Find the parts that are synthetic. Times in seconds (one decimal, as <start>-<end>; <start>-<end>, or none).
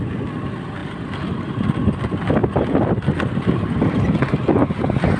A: 0.8-1.5